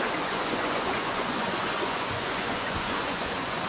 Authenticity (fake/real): fake